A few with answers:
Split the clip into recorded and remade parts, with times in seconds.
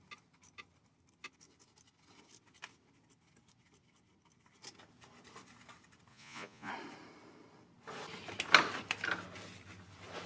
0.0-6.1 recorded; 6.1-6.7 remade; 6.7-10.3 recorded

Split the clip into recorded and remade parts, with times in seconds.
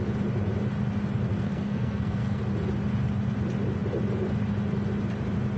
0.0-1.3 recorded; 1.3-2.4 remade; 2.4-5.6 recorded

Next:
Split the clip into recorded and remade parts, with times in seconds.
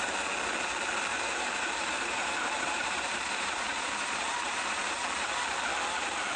0.0-1.1 recorded; 1.1-4.9 remade; 4.9-6.4 recorded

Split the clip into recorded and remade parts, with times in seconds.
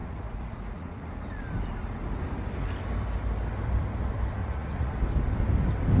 0.0-1.1 remade; 1.1-4.4 recorded; 4.4-4.9 remade; 4.9-6.0 recorded